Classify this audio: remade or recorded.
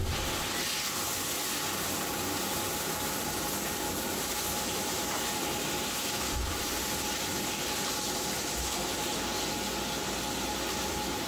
recorded